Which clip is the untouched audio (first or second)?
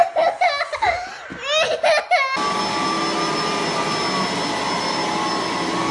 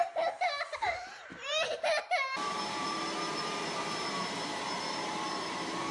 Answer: first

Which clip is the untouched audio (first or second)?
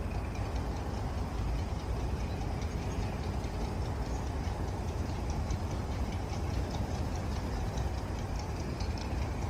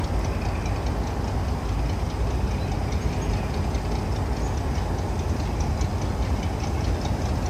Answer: second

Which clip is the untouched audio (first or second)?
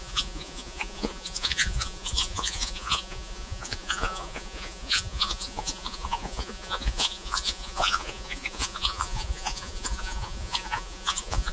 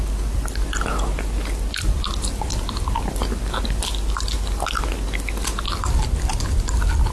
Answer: second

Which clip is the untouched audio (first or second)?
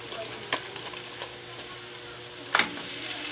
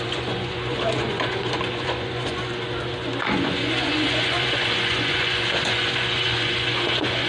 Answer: first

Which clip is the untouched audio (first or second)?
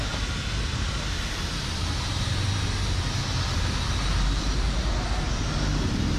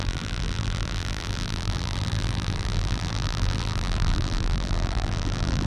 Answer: first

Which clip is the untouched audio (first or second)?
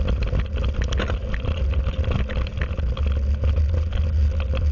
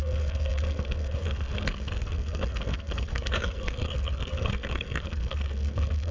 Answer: first